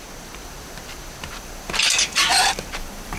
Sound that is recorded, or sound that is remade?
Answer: remade